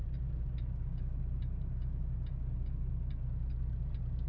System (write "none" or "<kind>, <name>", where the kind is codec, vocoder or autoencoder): none